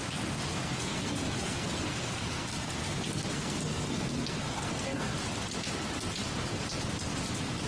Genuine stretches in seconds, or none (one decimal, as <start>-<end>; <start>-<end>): 0.0-0.5; 5.1-7.7